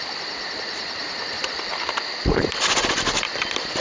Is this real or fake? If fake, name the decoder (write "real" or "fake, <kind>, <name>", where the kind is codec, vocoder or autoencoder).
real